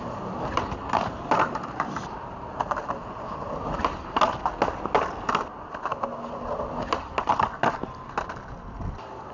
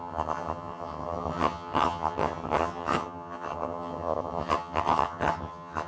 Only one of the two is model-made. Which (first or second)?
second